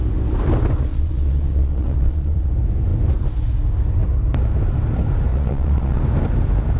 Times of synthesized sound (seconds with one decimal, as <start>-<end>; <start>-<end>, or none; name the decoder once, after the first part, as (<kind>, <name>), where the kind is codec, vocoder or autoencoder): 0.9-2.5 (vocoder, Vocos); 5.3-6.0

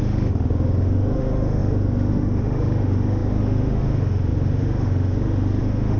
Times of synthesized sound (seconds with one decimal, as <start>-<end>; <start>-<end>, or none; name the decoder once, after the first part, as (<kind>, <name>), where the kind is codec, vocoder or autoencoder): 0.0-6.0 (autoencoder, DAC-VAE)

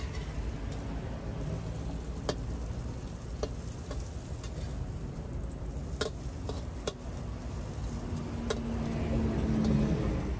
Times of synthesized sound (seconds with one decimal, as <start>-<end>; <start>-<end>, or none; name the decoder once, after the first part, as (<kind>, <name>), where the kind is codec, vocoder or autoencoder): none

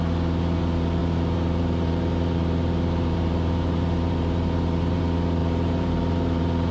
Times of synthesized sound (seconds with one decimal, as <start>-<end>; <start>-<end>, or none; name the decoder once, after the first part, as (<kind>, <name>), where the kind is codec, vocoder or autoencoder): 1.0-5.0 (vocoder, BigVGAN v2); 5.4-6.7

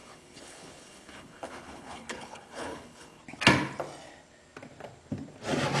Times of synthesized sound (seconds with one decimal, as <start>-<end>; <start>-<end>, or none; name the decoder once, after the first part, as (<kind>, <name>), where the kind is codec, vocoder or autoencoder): 0.0-3.2 (codec, HILCodec)

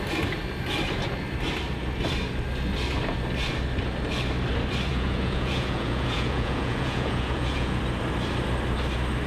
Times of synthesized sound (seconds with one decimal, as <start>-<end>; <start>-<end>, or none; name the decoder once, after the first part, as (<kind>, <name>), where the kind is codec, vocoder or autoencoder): 4.9-7.8 (vocoder, Vocos)